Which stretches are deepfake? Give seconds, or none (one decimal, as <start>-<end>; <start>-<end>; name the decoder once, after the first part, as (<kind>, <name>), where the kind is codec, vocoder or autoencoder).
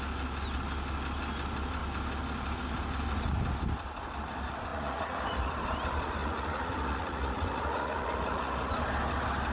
4.7-5.5 (vocoder, Vocos); 6.2-8.7